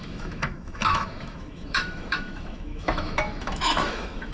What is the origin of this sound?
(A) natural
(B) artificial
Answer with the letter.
B